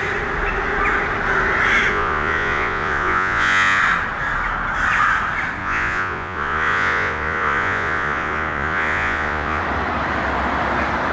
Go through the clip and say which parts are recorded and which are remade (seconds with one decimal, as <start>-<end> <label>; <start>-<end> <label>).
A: 0.0-1.9 recorded; 1.9-3.8 remade; 3.8-5.6 recorded; 5.6-9.6 remade; 9.6-11.1 recorded